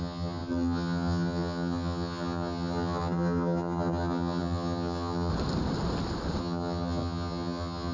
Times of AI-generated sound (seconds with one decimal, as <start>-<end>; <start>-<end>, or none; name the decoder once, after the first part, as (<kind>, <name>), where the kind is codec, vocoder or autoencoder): 0.0-5.3 (vocoder, HiFi-GAN); 6.4-7.9